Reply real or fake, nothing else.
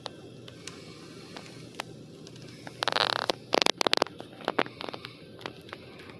real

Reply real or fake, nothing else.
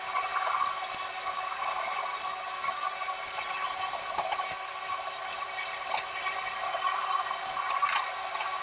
real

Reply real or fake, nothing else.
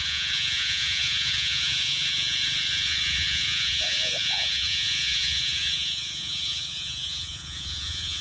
fake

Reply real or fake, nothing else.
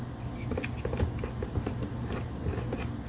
real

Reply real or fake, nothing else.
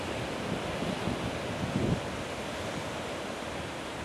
real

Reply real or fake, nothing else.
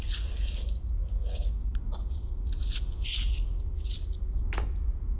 real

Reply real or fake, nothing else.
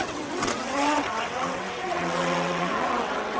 fake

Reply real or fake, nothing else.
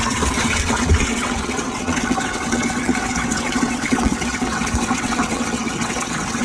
fake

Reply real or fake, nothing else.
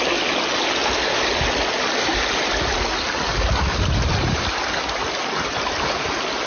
real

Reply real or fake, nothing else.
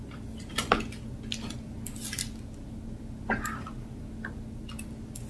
real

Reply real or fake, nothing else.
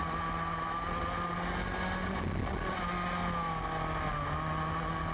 real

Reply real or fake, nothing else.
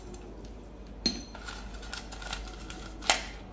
real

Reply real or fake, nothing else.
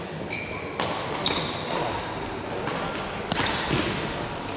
real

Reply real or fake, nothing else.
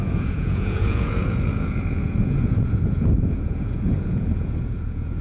fake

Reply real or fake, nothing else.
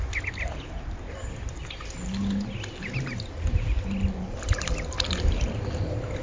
real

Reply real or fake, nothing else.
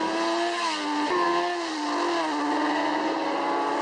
real